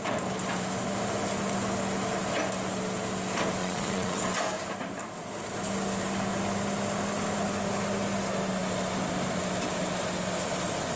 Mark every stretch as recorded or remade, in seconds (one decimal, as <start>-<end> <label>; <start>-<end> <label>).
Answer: 0.0-3.6 recorded; 3.6-4.2 remade; 4.2-11.0 recorded

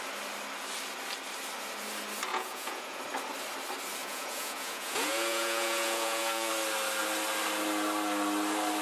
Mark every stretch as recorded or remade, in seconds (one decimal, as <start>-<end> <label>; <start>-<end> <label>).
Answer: 0.0-2.3 recorded; 2.3-3.0 remade; 3.0-4.0 recorded; 4.0-6.5 remade; 6.5-8.8 recorded

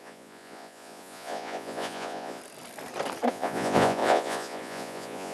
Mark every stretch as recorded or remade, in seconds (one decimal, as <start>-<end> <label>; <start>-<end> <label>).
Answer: 0.0-2.4 remade; 2.4-3.3 recorded; 3.3-5.3 remade

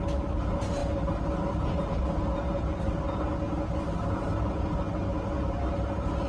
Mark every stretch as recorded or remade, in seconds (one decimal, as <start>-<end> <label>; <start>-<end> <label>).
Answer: 0.0-6.3 recorded

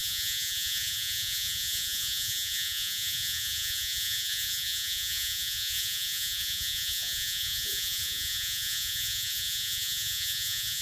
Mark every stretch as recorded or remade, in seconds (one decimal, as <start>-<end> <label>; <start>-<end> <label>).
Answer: 0.0-10.8 remade

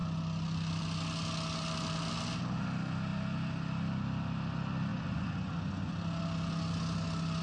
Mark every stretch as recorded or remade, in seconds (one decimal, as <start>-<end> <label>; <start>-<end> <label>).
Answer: 0.0-4.9 recorded; 4.9-5.9 remade; 5.9-7.4 recorded

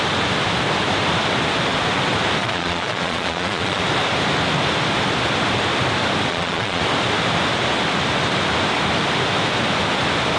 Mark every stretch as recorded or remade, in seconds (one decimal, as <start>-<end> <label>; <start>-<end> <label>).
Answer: 0.0-2.4 recorded; 2.4-3.8 remade; 3.8-6.3 recorded; 6.3-6.8 remade; 6.8-10.4 recorded

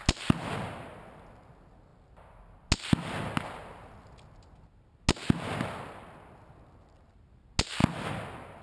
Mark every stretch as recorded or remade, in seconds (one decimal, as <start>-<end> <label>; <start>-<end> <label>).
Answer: 0.0-8.6 recorded